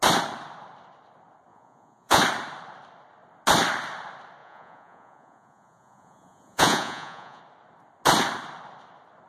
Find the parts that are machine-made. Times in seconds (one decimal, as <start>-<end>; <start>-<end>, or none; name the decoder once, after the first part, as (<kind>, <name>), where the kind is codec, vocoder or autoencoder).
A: 1.5-2.2 (vocoder, Vocos); 4.4-7.4